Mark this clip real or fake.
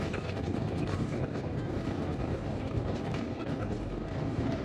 fake